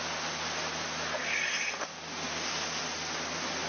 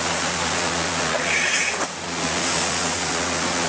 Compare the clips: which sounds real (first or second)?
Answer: first